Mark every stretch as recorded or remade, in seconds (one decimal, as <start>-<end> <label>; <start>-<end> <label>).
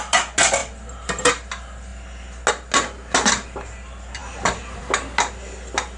0.0-6.0 recorded